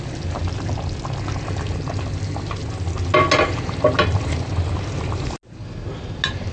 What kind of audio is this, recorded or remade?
recorded